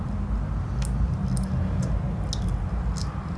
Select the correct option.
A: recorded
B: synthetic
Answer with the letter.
A